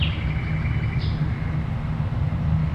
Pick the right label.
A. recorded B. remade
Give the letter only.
A